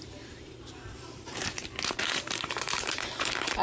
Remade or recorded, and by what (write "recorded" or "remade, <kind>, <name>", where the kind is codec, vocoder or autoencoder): remade, vocoder, BigVGAN v2